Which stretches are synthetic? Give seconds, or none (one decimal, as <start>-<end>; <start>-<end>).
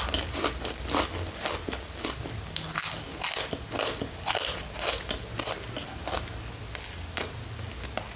5.8-6.5